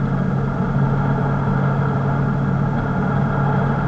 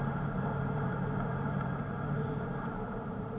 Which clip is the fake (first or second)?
second